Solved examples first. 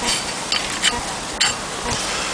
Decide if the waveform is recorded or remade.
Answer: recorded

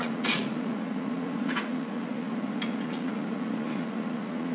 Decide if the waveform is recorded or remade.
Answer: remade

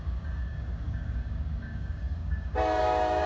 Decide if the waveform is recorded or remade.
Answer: remade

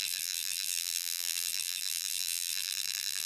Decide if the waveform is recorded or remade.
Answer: remade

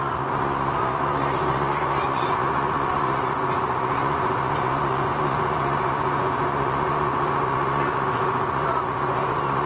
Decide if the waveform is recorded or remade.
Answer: remade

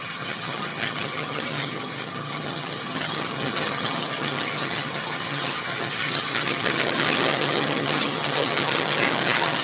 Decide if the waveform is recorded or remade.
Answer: remade